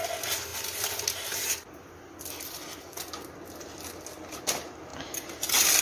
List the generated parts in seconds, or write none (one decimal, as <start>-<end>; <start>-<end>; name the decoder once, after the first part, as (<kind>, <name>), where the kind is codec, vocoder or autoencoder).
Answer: none